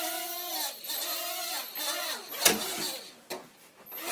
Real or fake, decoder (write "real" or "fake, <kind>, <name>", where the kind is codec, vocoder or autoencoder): real